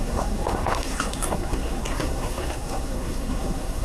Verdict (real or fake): fake